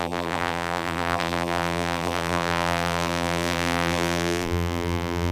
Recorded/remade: remade